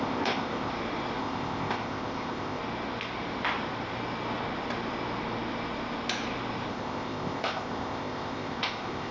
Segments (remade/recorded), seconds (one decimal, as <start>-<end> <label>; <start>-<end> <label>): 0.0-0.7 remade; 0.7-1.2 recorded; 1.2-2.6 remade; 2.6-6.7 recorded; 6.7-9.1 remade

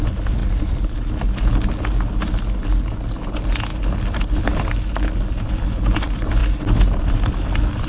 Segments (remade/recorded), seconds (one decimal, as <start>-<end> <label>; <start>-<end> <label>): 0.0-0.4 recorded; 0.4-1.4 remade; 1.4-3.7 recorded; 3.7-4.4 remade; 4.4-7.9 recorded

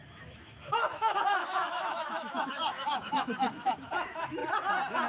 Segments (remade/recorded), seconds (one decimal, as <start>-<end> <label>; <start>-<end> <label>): 0.0-4.4 remade; 4.4-5.1 recorded

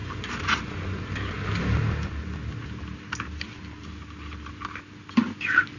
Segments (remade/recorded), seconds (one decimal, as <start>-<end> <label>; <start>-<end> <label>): 0.0-5.8 recorded